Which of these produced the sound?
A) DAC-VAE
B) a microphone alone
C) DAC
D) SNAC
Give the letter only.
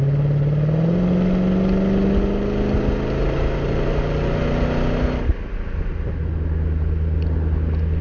B